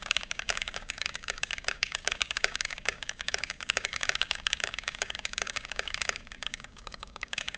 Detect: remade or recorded remade